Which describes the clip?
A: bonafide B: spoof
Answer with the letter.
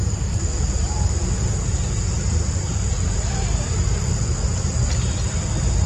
B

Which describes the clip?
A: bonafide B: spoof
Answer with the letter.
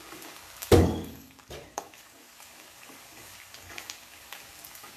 B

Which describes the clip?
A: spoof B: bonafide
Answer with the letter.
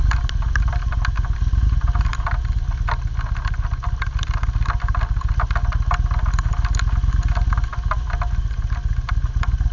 B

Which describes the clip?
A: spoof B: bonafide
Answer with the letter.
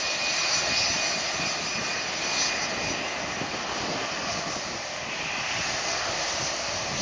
B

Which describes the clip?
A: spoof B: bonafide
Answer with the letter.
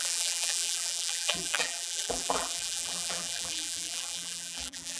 A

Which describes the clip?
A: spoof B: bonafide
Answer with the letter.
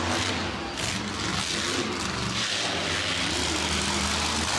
B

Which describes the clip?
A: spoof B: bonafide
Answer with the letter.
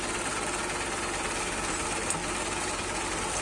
B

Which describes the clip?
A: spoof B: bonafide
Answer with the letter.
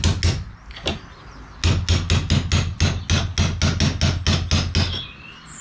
B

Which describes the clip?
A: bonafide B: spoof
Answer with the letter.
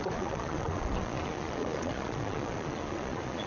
B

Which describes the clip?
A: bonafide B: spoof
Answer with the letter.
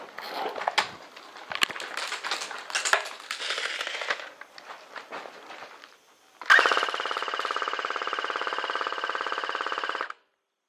A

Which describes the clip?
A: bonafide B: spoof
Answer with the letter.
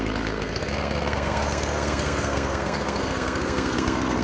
B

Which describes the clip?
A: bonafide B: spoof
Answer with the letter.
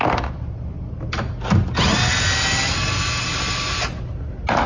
A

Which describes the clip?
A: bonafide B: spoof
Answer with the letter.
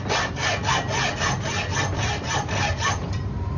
A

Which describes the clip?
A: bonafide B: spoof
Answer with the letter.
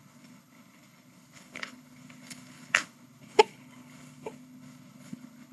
B